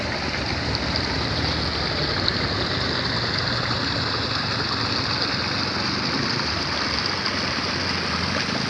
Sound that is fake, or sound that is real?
real